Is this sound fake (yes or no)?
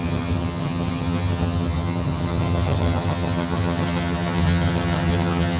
yes